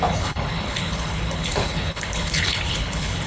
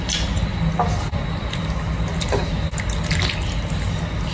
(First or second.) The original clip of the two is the second